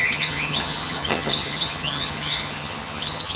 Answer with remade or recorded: remade